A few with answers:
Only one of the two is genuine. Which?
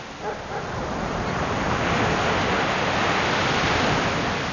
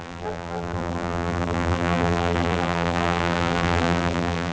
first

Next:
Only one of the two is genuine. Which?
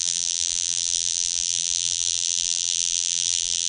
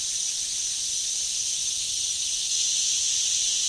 second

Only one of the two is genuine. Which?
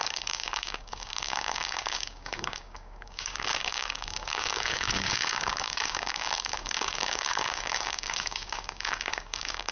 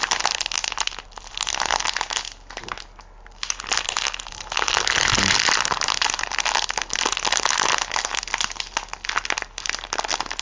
second